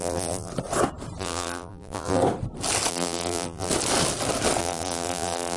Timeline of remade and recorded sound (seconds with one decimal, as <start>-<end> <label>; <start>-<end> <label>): 0.0-0.5 remade; 0.5-1.2 recorded; 1.2-2.2 remade; 2.2-2.9 recorded; 2.9-3.7 remade; 3.7-4.6 recorded; 4.6-5.6 remade